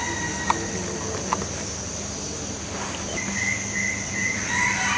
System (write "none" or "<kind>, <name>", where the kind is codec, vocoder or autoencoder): none